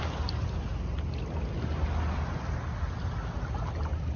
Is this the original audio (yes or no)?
yes